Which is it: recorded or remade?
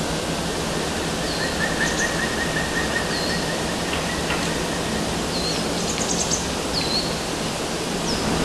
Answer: recorded